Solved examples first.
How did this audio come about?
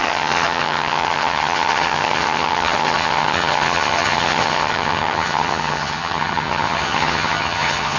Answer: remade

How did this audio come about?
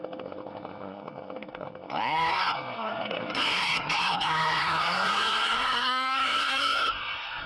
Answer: remade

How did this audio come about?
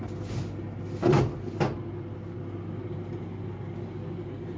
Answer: recorded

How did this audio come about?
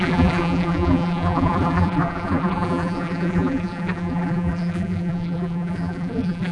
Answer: remade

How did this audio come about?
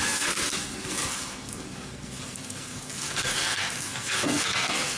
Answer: remade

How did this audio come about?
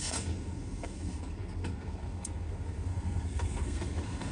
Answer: remade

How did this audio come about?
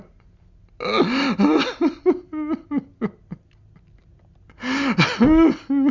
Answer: recorded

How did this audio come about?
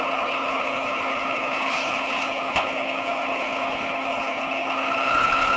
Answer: remade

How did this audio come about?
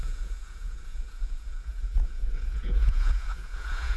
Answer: remade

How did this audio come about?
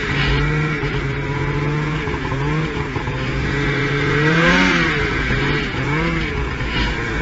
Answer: remade